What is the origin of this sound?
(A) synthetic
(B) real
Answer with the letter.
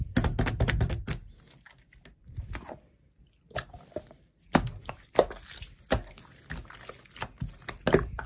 B